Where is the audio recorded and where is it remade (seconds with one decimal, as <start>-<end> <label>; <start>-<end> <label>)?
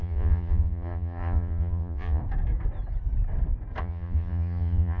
0.0-2.2 remade; 2.2-3.8 recorded; 3.8-5.0 remade